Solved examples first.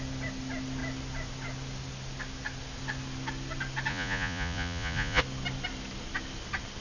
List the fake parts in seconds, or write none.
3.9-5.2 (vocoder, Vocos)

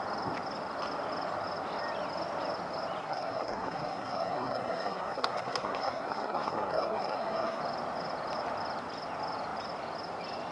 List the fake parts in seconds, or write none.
3.0-7.6 (codec, SNAC)

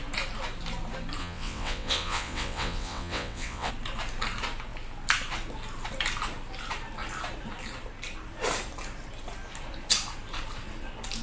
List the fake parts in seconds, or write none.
1.2-3.7 (vocoder, WaveNeXt)

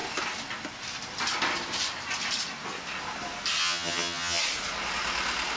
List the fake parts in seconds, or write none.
3.6-4.4 (vocoder, HiFi-GAN)

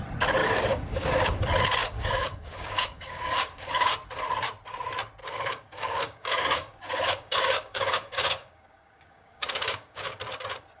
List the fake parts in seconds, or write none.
0.4-1.4 (codec, DAC); 1.8-3.9; 5.2-10.2

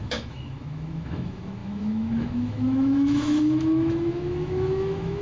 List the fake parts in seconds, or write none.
0.0-5.2 (autoencoder, DAC-VAE)

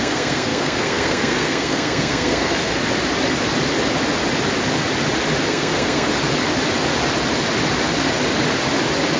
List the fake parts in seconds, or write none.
0.0-2.8 (codec, SNAC); 5.5-6.1